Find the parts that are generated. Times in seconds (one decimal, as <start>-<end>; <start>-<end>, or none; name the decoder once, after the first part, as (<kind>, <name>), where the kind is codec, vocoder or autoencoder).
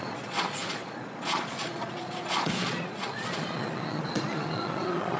0.0-5.2 (vocoder, Vocos)